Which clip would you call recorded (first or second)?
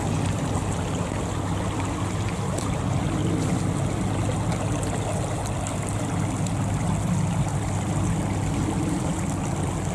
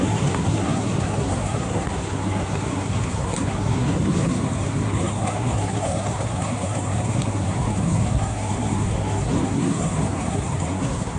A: first